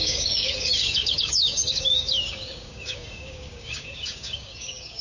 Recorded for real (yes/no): no